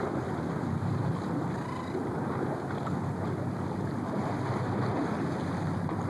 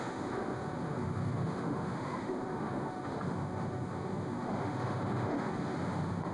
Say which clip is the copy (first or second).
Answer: second